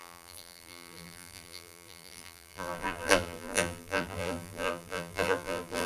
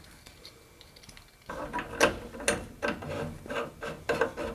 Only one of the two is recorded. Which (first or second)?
second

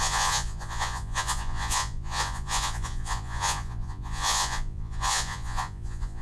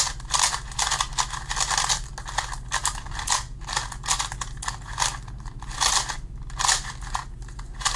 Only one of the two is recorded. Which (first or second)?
second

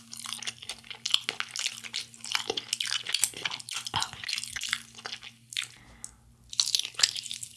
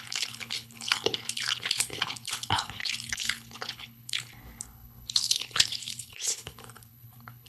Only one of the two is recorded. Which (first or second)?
first